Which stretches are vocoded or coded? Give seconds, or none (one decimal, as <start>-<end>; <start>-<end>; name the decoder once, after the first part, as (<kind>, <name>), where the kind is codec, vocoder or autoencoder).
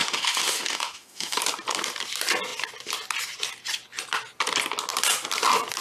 0.0-1.4 (autoencoder, DAC-VAE)